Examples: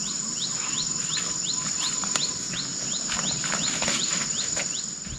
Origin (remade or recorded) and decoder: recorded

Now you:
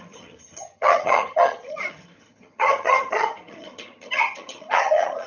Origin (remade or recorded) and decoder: remade, vocoder, HiFi-GAN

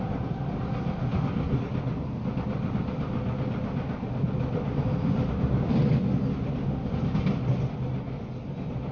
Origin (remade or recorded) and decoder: recorded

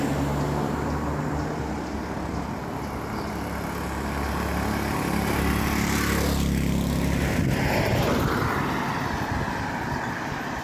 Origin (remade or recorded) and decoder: recorded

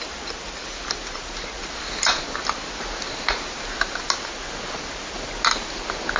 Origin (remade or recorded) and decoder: recorded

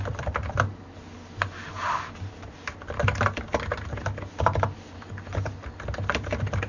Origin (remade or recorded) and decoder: recorded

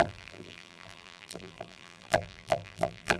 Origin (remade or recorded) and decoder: remade, vocoder, BigVGAN v2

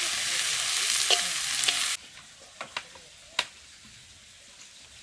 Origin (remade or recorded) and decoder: recorded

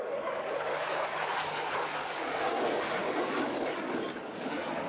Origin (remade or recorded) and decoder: remade, codec, DAC